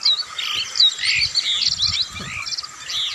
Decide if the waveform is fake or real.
real